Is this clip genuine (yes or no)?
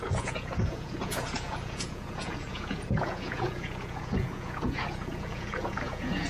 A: no